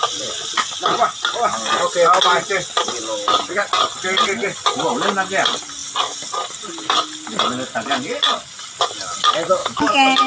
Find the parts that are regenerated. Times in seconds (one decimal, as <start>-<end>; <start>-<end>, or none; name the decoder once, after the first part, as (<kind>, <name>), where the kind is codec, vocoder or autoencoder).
9.6-10.3 (autoencoder, DAC-VAE)